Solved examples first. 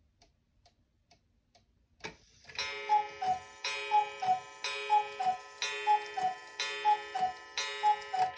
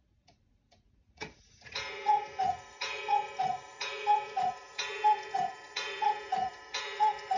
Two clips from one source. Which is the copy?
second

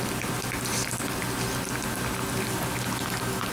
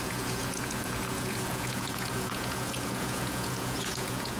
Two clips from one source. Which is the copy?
second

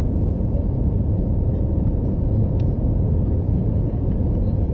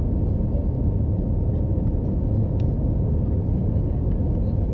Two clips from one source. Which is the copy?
first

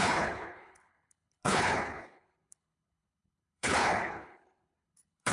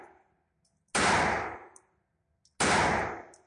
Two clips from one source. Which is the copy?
first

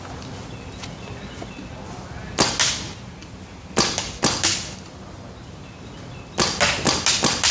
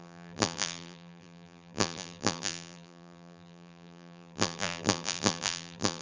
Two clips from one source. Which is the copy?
second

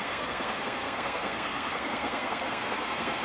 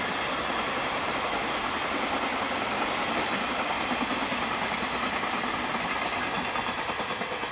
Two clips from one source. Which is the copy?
first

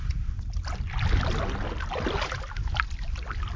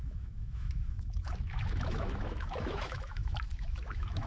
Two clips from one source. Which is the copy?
second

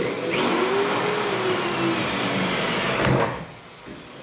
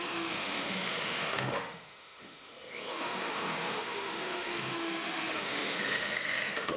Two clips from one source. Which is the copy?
second